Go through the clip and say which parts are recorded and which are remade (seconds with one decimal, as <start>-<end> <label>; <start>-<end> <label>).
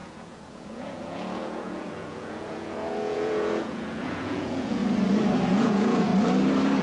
0.0-4.8 remade; 4.8-5.6 recorded; 5.6-6.1 remade; 6.1-6.8 recorded